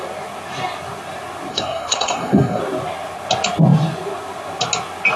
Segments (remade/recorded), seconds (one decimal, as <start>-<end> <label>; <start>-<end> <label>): 0.0-1.5 recorded; 1.5-2.6 remade; 2.6-5.2 recorded